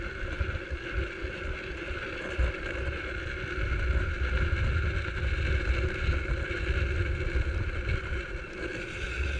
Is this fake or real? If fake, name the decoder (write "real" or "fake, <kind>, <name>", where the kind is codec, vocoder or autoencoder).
real